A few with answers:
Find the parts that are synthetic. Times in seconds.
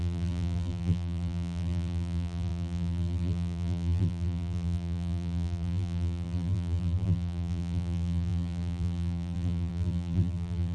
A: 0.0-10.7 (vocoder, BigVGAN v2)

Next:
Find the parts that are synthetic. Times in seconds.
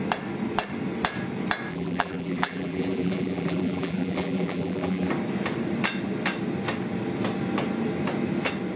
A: 1.7-5.1 (vocoder, BigVGAN v2)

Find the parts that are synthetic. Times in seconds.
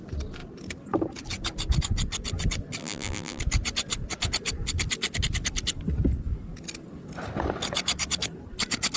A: 2.8-3.4 (vocoder, BigVGAN v2)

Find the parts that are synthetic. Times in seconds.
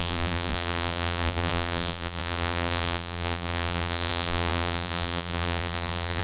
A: 0.0-6.2 (vocoder, BigVGAN v2)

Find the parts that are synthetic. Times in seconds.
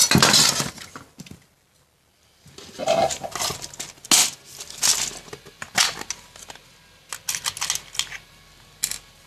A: none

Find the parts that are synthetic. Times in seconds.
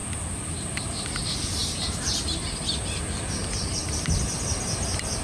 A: none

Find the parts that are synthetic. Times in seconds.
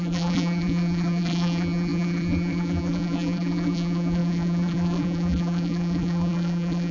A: 0.0-6.9 (vocoder, BigVGAN v2)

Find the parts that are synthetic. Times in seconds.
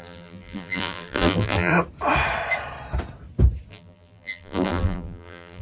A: 0.0-1.7 (vocoder, BigVGAN v2); 3.7-5.6